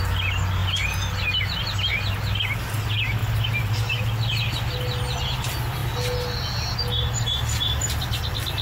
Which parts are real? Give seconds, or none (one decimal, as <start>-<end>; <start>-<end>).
0.0-3.2; 3.8-8.6